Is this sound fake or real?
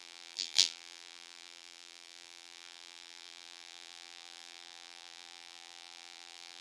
fake